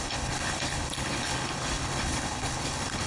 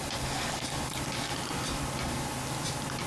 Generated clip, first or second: first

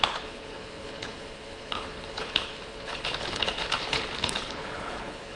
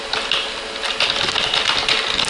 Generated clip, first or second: first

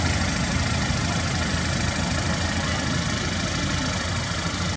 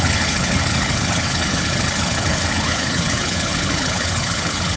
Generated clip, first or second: second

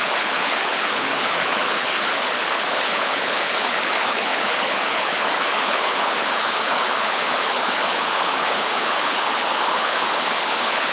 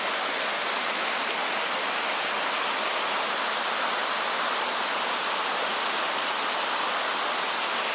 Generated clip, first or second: first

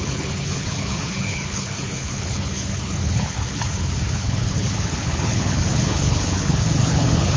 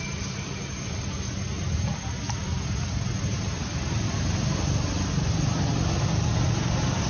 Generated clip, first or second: first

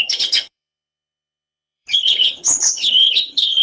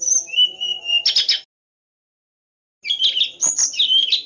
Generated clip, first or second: first